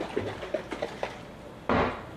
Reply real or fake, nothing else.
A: real